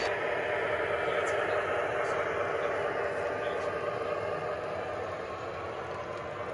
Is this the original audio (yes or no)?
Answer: yes